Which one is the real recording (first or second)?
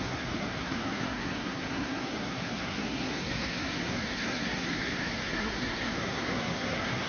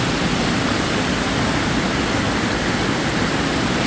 second